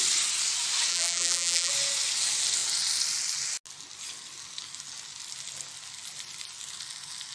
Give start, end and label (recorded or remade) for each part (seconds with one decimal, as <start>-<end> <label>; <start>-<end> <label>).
0.0-0.9 recorded; 0.9-1.7 remade; 1.7-7.3 recorded